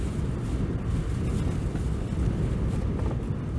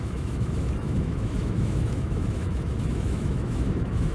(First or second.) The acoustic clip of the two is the first